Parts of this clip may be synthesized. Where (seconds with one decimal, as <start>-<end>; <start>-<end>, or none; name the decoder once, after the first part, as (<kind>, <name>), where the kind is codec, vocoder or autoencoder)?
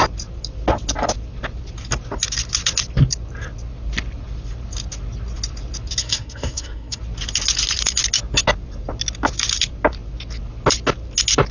6.0-7.0 (codec, SNAC)